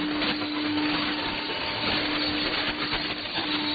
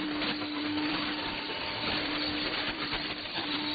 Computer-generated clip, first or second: second